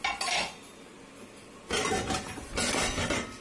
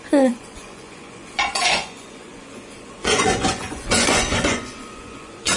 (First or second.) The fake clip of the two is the second